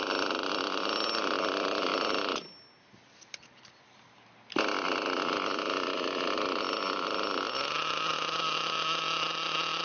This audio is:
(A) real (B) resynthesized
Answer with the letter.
A